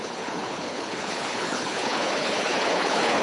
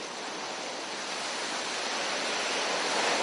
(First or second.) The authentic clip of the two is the second